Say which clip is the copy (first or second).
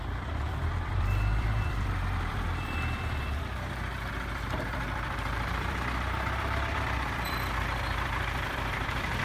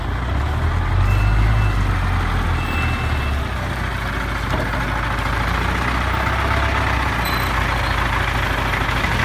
first